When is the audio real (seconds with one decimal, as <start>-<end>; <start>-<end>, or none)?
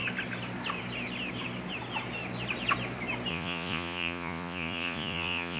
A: 0.0-3.3